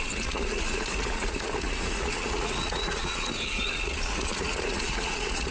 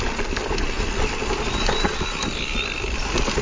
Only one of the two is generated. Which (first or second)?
first